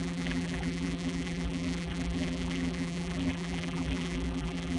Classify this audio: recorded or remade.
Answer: remade